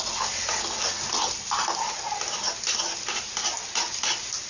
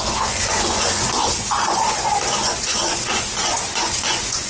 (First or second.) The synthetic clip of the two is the second